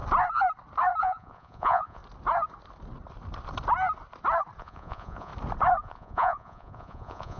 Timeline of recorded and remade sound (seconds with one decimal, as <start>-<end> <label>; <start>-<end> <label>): 0.0-1.0 recorded; 1.0-2.0 remade; 2.0-4.6 recorded; 4.6-5.3 remade; 5.3-5.8 recorded; 5.8-7.4 remade